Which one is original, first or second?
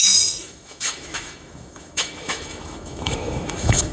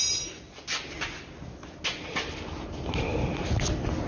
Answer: second